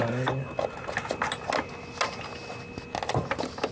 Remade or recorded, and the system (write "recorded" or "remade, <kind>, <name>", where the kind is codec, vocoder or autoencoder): recorded